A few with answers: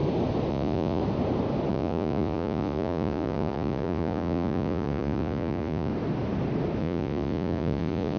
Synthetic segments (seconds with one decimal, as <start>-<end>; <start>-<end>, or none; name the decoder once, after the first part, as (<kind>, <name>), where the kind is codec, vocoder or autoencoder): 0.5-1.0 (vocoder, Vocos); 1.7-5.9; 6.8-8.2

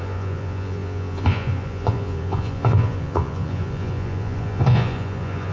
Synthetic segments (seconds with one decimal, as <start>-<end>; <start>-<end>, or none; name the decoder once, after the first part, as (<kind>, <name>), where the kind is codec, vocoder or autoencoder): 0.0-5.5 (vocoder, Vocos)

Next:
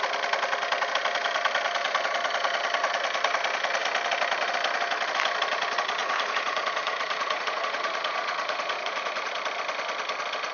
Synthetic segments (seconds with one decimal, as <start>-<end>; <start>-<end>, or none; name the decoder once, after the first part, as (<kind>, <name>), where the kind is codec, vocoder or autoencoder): 6.0-9.3 (vocoder, Vocos)

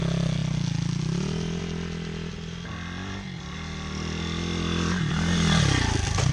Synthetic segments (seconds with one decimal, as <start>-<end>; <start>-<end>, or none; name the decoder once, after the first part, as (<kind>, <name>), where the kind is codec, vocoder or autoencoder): none

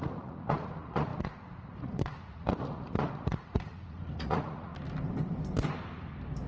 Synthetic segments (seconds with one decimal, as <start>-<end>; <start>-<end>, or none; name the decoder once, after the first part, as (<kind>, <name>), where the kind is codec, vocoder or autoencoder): 0.0-4.7 (vocoder, Vocos)